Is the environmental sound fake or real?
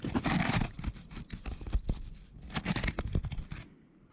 real